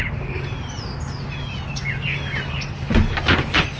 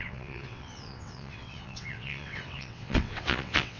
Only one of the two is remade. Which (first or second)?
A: second